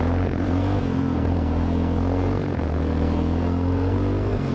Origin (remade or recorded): remade